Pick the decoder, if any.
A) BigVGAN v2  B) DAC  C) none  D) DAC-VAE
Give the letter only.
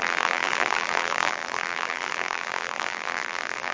A